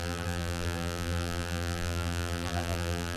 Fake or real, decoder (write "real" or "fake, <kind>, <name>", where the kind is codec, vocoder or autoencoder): fake, vocoder, BigVGAN v2